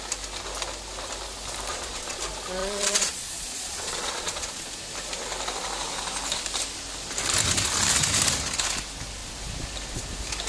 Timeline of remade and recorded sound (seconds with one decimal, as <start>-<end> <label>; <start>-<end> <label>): 0.0-1.7 recorded; 1.7-2.2 remade; 2.2-2.6 recorded; 2.6-4.7 remade; 4.7-10.5 recorded

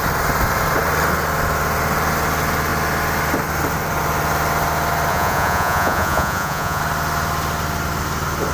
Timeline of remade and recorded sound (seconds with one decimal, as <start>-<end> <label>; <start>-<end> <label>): 0.0-5.1 recorded; 5.1-6.8 remade; 6.8-8.5 recorded

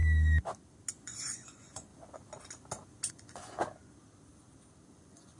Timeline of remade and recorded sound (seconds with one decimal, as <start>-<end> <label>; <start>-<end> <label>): 0.0-0.9 recorded; 0.9-1.9 remade; 1.9-3.1 recorded; 3.1-3.6 remade; 3.6-4.9 recorded; 4.9-5.4 remade

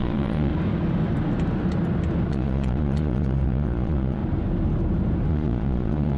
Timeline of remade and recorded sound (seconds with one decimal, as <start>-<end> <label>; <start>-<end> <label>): 0.0-0.5 remade; 0.5-2.3 recorded; 2.3-4.2 remade; 4.2-5.3 recorded; 5.3-6.2 remade

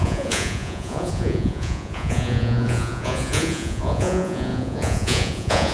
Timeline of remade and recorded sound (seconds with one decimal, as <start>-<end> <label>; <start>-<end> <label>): 0.0-5.7 remade

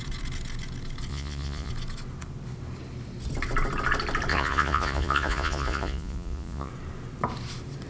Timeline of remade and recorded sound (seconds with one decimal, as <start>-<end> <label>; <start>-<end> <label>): 0.0-1.1 recorded; 1.1-1.7 remade; 1.7-4.3 recorded; 4.3-6.7 remade; 6.7-7.9 recorded

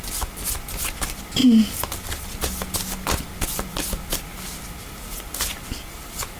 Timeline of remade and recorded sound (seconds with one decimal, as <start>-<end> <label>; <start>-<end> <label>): 0.0-6.4 recorded

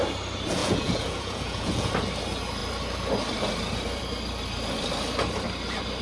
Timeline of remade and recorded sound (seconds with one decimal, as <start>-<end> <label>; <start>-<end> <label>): 0.0-0.6 recorded; 0.6-1.9 remade; 1.9-6.0 recorded